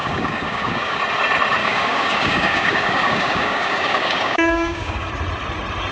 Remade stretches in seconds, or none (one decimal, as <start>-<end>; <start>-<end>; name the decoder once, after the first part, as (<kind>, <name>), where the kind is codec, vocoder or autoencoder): 0.0-1.0 (codec, DAC); 1.6-5.1